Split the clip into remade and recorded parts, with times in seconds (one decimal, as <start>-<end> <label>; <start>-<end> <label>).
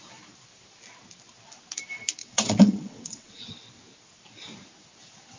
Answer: 0.0-2.2 recorded; 2.2-3.5 remade; 3.5-5.4 recorded